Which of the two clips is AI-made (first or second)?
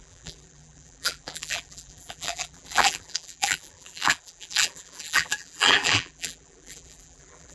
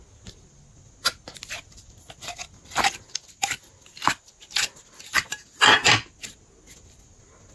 first